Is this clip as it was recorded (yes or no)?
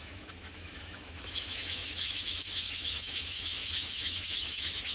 no